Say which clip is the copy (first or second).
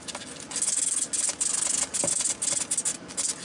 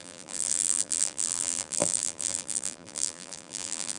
second